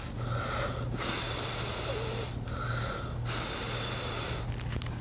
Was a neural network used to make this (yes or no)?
no